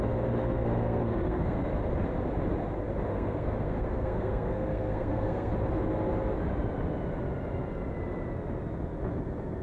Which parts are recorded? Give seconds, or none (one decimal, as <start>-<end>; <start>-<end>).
0.0-0.4; 1.7-3.1; 5.5-9.6